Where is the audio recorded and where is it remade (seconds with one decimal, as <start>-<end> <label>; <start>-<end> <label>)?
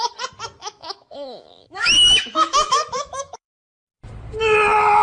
0.0-0.6 recorded; 0.6-3.6 remade; 3.6-5.0 recorded